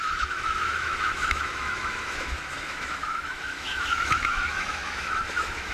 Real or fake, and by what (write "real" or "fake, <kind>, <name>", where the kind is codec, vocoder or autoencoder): fake, autoencoder, DAC-VAE